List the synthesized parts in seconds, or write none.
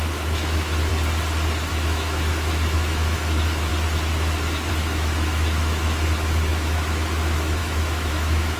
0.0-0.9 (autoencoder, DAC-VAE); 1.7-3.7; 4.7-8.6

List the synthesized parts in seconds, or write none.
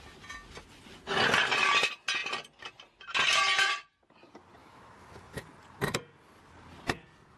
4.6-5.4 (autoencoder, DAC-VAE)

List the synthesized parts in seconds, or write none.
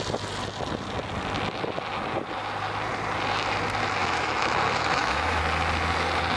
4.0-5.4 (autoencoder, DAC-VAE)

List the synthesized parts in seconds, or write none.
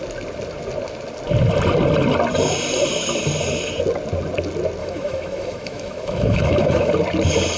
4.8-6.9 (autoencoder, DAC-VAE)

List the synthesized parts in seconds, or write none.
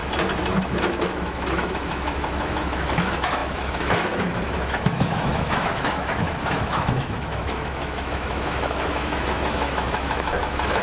0.8-10.8 (autoencoder, DAC-VAE)